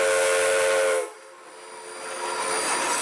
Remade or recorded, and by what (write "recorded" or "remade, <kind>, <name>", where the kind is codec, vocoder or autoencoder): recorded